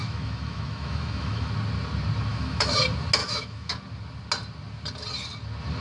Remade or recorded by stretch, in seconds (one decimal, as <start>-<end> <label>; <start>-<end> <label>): 0.0-1.5 remade; 1.5-2.3 recorded; 2.3-2.8 remade; 2.8-3.2 recorded; 3.2-3.7 remade; 3.7-5.8 recorded